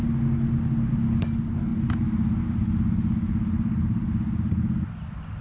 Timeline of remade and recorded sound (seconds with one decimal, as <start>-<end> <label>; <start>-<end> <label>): 0.0-5.4 recorded